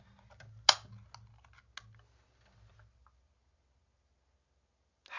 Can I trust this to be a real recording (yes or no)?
yes